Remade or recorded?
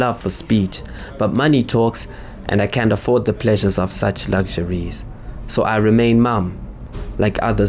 recorded